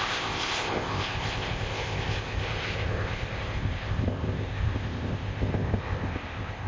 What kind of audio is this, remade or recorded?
remade